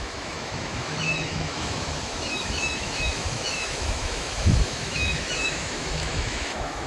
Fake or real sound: fake